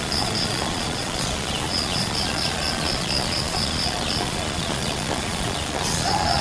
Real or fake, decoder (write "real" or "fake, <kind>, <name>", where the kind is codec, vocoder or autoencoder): fake, vocoder, Vocos